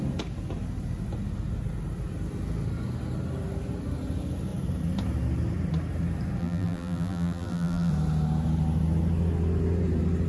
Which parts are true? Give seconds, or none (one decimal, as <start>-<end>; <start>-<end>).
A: 0.0-6.4; 7.9-10.3